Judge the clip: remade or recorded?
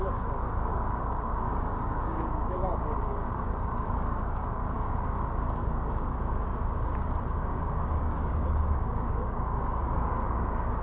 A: remade